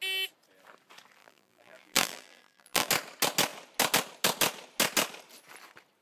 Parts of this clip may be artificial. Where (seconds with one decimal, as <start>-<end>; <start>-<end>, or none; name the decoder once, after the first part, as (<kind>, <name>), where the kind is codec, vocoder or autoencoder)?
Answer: 1.2-2.9 (vocoder, BigVGAN v2)